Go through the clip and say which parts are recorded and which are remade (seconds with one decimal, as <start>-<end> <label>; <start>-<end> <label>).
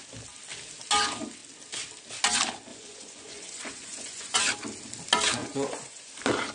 0.0-2.7 recorded; 2.7-4.4 remade; 4.4-5.4 recorded; 5.4-6.1 remade; 6.1-6.5 recorded